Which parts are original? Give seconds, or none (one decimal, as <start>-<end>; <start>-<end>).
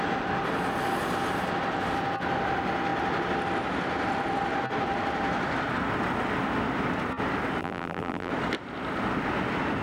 0.0-7.6; 8.3-9.8